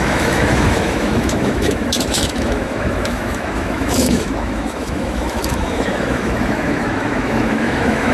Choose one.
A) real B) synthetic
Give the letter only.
B